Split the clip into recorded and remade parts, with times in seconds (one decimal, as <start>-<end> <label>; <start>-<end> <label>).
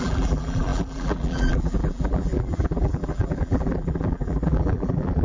0.0-5.2 remade